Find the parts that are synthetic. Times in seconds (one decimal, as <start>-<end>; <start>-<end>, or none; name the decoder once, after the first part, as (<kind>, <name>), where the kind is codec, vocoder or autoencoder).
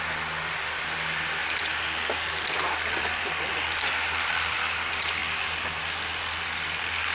0.0-1.4 (vocoder, BigVGAN v2); 3.2-7.1